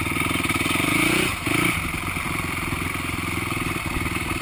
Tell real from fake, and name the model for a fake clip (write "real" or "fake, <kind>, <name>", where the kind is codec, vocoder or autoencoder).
real